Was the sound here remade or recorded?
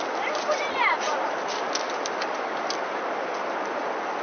recorded